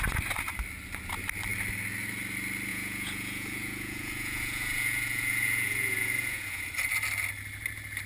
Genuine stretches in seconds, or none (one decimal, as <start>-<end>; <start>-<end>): 0.0-2.7; 6.6-8.1